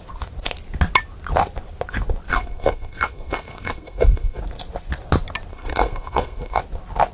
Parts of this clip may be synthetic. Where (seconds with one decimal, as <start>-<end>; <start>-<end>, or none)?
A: 2.3-4.4; 5.5-6.6

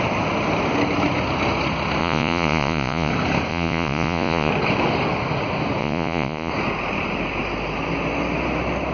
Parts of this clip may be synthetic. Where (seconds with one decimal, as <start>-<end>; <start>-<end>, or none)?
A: 2.0-3.1; 3.5-4.5; 5.8-6.5

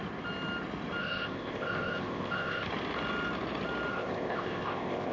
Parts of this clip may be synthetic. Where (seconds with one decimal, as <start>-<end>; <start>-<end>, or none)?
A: 1.0-2.7; 3.9-5.1